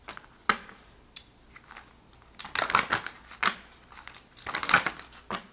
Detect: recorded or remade recorded